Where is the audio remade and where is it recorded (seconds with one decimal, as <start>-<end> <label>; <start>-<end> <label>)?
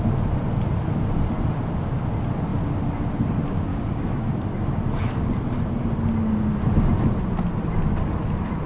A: 0.0-3.7 recorded; 3.7-4.3 remade; 4.3-8.7 recorded